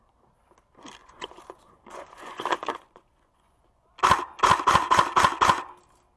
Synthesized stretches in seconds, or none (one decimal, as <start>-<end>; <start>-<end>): 1.0-3.9